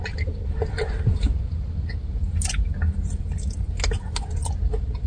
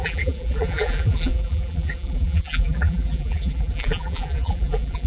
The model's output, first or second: second